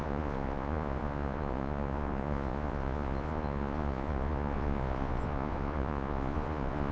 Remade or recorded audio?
remade